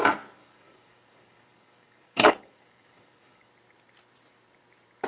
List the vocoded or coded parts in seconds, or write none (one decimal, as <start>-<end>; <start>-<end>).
0.4-3.5

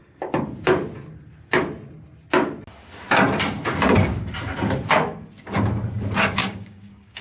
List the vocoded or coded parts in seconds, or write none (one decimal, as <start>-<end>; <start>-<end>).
6.4-7.2

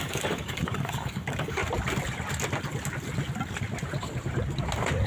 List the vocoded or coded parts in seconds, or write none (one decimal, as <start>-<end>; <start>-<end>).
0.0-1.6

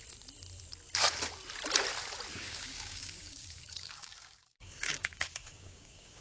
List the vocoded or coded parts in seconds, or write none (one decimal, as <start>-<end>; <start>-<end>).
2.3-6.2